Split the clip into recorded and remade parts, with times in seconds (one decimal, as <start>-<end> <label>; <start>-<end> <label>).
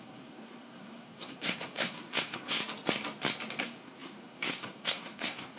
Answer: 0.0-2.6 remade; 2.6-3.6 recorded; 3.6-5.6 remade